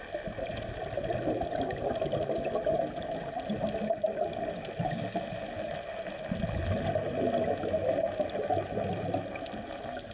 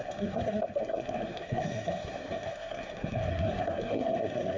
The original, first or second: first